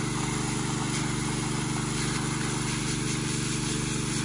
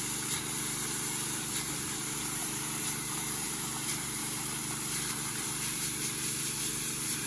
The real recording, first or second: first